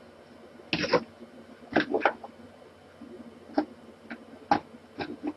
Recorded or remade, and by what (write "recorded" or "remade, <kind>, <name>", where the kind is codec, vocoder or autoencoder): recorded